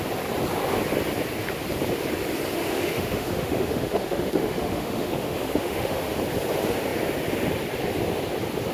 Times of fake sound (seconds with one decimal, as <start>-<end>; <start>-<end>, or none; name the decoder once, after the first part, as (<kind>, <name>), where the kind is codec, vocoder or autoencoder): 2.7-6.2 (autoencoder, DAC-VAE)